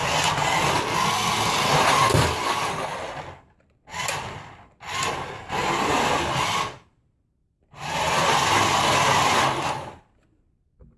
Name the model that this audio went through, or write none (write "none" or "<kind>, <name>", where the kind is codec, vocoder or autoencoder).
none